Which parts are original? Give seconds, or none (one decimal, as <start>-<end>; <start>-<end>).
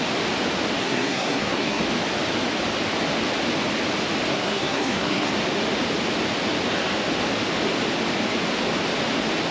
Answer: 0.0-0.8; 1.8-4.3; 5.3-9.5